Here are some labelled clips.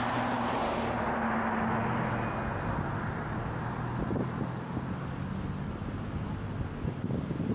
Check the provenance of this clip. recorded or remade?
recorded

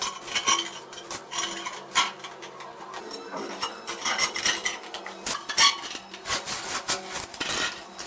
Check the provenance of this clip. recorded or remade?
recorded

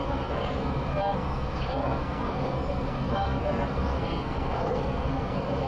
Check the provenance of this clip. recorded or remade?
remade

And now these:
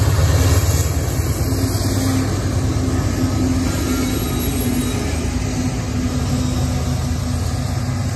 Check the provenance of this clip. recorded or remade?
recorded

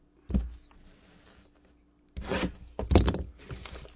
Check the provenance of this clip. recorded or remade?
recorded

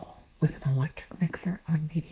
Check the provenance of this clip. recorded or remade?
remade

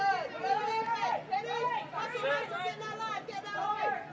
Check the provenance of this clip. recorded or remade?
recorded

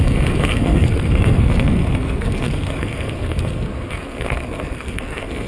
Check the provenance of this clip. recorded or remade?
remade